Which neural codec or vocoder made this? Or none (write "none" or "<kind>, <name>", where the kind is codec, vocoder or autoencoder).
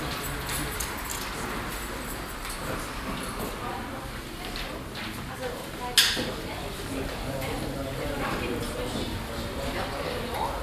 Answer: none